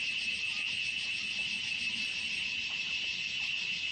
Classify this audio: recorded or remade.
recorded